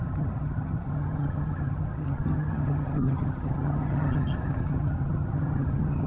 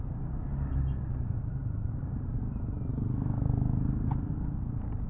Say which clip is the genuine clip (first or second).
second